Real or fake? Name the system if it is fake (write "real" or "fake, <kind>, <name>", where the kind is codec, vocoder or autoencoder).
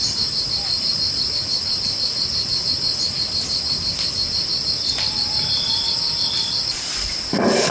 fake, vocoder, BigVGAN v2